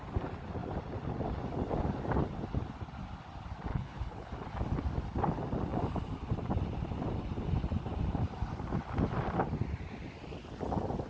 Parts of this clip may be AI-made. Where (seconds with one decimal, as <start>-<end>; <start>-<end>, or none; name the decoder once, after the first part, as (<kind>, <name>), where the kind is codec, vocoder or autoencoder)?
3.7-4.3 (codec, HILCodec)